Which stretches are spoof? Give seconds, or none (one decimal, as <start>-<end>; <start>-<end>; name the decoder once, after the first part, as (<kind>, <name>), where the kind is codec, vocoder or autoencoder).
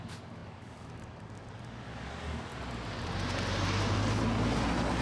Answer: 0.0-2.5 (codec, DAC)